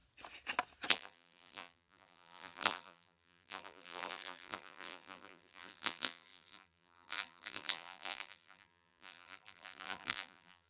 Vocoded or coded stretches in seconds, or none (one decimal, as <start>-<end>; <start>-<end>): 0.9-10.7